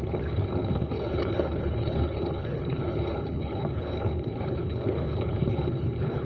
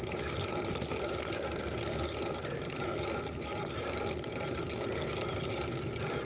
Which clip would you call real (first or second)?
second